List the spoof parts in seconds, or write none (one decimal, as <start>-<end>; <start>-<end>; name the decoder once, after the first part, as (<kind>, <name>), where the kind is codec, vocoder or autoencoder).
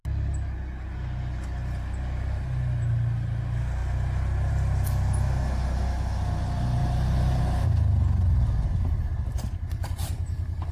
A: 6.8-7.4 (vocoder, BigVGAN v2)